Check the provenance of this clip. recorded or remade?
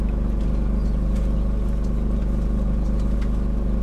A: recorded